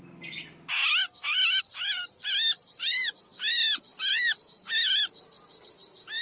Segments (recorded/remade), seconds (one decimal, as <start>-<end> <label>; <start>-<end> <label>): 0.0-6.2 recorded